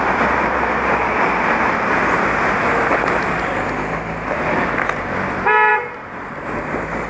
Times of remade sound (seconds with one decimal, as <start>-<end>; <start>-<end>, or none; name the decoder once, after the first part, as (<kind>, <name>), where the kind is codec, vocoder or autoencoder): none